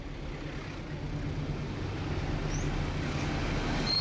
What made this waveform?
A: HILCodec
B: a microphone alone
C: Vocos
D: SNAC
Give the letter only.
B